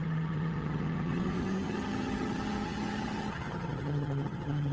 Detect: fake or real fake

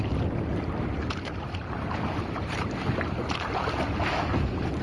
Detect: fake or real real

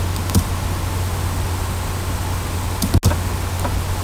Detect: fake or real real